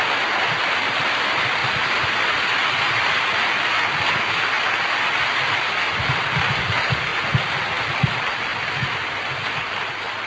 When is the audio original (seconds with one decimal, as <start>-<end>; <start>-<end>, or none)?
0.0-10.3